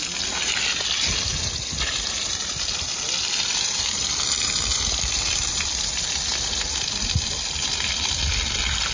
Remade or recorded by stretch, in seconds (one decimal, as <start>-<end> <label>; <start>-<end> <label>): 0.0-1.3 recorded; 1.3-5.7 remade; 5.7-6.3 recorded; 6.3-8.1 remade; 8.1-8.9 recorded

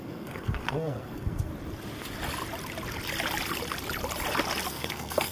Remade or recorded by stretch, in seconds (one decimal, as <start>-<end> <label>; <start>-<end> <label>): 0.0-1.5 remade; 1.5-4.7 recorded; 4.7-5.3 remade

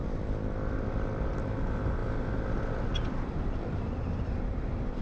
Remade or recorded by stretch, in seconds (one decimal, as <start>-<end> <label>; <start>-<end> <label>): 0.0-5.0 recorded

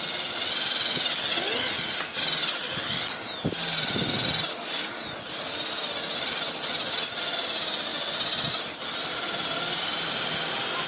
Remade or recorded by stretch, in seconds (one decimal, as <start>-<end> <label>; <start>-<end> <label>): 0.0-10.9 recorded

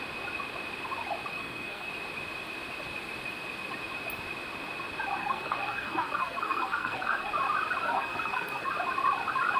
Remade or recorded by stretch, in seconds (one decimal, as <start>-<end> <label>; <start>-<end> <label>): 0.0-1.3 recorded; 1.3-1.9 remade; 1.9-5.2 recorded; 5.2-7.3 remade; 7.3-7.8 recorded; 7.8-8.7 remade; 8.7-9.6 recorded

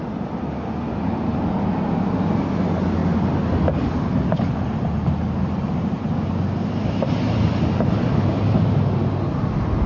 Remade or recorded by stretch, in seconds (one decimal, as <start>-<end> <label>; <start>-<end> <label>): 0.0-9.9 recorded

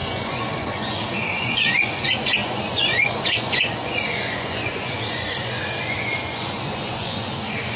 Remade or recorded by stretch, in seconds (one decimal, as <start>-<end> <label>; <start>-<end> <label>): 0.0-7.8 remade